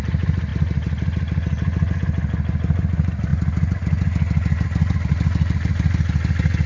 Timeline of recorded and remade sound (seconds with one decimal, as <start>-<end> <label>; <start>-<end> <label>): 0.0-6.7 recorded